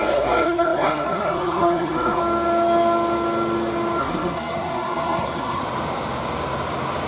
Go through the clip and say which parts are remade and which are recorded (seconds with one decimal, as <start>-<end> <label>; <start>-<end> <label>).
0.0-2.2 remade; 2.2-4.0 recorded; 4.0-5.6 remade; 5.6-7.1 recorded